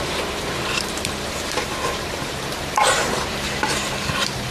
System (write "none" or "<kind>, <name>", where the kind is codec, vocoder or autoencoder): vocoder, BigVGAN v2